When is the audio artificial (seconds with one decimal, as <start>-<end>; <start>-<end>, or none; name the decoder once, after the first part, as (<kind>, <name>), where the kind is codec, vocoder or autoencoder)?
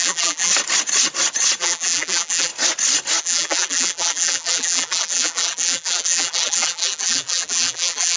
0.0-0.5 (vocoder, BigVGAN v2); 1.6-2.5; 3.2-8.2